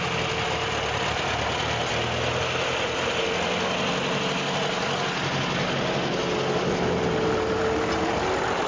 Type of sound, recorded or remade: recorded